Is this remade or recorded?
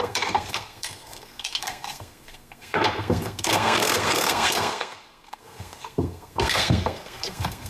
remade